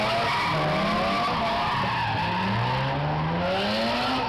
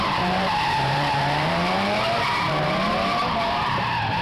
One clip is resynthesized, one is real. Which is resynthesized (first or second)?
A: second